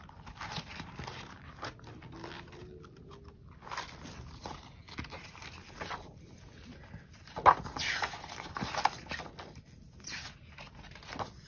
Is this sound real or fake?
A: real